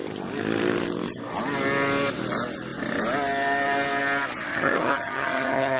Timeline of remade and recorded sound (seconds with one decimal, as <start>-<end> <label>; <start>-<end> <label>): 0.0-4.5 recorded; 4.5-5.8 remade